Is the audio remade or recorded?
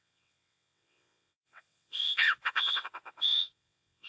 remade